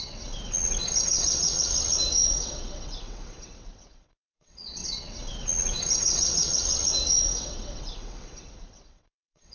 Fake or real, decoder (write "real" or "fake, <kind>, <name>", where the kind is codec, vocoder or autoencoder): fake, vocoder, WaveNeXt